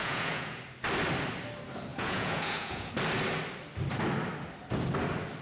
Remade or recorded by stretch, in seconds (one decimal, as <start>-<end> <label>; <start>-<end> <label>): 0.0-0.6 remade; 0.6-1.9 recorded; 1.9-2.9 remade; 2.9-5.4 recorded